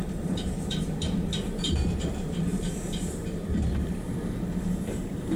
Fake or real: fake